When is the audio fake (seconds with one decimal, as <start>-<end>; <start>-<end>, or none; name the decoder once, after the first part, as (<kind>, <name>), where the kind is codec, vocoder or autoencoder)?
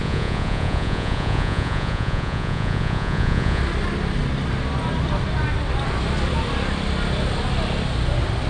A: 0.0-3.6 (vocoder, Vocos)